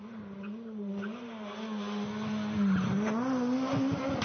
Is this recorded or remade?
recorded